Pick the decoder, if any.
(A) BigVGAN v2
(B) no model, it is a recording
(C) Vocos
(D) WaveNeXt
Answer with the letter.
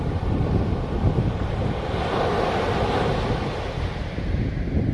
A